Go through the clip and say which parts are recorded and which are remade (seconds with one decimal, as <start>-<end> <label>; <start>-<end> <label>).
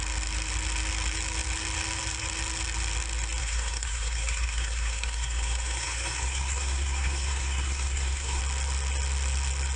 0.0-3.4 recorded; 3.4-8.4 remade; 8.4-9.8 recorded